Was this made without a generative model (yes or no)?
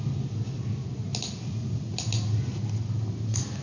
yes